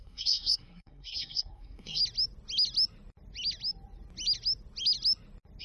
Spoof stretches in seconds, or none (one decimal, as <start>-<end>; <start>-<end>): 0.0-2.0